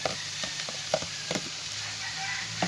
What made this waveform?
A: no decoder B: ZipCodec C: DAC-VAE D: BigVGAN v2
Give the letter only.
A